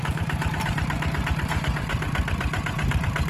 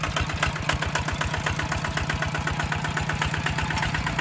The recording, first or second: second